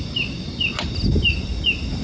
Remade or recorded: recorded